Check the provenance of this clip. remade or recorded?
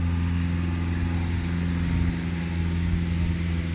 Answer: recorded